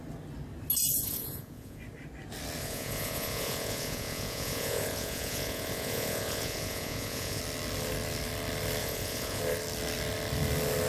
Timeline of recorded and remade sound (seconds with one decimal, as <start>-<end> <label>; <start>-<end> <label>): 0.0-0.9 recorded; 0.9-1.8 remade; 1.8-2.6 recorded; 2.6-7.4 remade; 7.4-8.8 recorded; 8.8-9.4 remade; 9.4-10.9 recorded